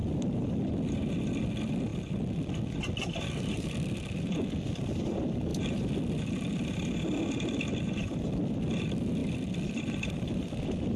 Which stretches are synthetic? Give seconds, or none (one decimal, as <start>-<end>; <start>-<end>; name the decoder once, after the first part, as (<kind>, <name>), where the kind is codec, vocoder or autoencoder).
0.0-1.1 (vocoder, BigVGAN v2); 9.2-11.0